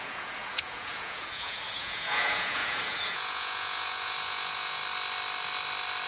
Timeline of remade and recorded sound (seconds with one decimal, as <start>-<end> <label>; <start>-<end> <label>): 0.0-4.8 remade; 4.8-6.1 recorded